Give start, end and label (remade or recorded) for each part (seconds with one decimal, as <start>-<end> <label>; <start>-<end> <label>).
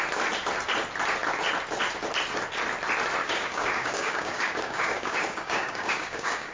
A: 0.0-3.2 recorded; 3.2-6.5 remade